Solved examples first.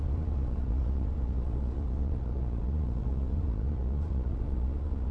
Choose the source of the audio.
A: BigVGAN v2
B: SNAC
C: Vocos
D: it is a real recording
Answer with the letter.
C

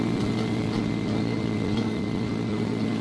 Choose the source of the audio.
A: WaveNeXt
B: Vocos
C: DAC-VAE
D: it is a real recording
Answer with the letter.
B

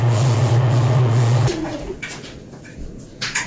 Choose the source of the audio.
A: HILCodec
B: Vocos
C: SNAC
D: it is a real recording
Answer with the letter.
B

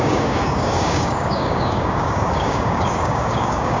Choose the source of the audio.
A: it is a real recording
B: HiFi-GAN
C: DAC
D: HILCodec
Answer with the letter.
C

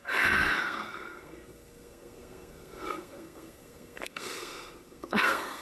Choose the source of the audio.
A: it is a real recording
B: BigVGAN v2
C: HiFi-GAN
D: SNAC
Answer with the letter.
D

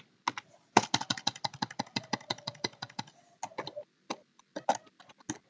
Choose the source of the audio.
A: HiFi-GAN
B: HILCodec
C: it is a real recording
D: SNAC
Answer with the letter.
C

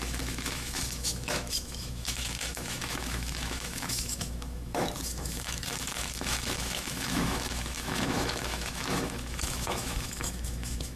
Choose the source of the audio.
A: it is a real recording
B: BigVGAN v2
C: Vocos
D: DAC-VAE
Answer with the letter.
D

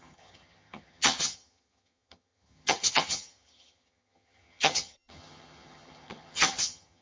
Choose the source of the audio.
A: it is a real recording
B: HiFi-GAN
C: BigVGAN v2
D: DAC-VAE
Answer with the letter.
B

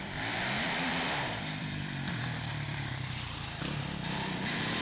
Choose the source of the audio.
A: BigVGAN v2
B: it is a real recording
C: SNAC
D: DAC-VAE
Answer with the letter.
A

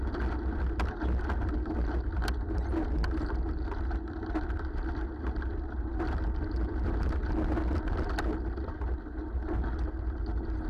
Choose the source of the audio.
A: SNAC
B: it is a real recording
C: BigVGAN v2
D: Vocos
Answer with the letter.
B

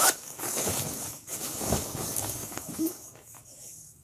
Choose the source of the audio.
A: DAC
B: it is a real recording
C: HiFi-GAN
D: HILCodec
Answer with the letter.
A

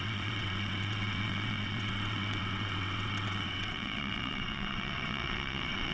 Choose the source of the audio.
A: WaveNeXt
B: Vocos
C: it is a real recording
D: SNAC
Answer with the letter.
A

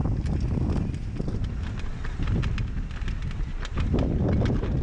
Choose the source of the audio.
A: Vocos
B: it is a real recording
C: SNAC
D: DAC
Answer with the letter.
B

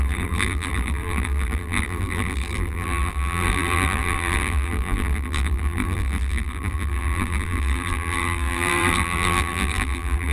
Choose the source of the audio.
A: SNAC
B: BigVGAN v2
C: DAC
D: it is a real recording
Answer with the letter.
B